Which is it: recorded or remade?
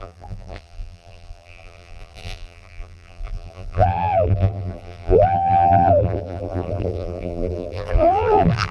remade